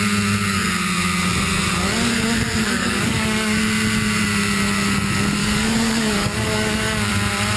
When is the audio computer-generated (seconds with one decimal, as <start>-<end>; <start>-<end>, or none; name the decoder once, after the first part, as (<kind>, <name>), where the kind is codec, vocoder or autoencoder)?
2.6-3.6 (codec, DAC); 5.4-7.1